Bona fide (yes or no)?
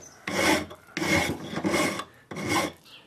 yes